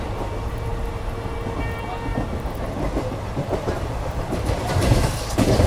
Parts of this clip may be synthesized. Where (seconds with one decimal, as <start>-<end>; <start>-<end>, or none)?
2.1-5.7